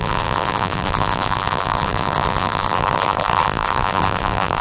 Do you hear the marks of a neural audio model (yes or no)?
yes